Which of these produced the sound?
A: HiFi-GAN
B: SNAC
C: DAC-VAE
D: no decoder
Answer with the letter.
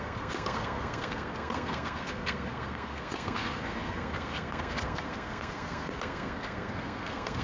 B